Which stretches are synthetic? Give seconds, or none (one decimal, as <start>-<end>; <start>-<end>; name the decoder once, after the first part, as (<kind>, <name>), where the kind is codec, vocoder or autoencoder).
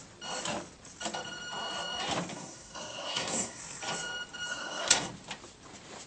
2.3-3.6 (codec, SNAC); 4.5-5.1